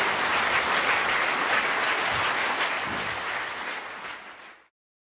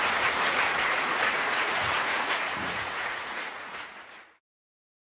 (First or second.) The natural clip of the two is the first